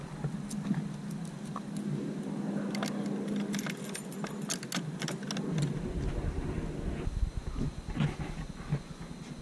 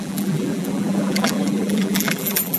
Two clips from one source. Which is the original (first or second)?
first